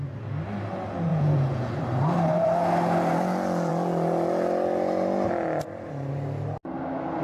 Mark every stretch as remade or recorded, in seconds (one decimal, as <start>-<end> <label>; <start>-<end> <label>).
0.0-1.1 recorded; 1.1-1.7 remade; 1.7-7.2 recorded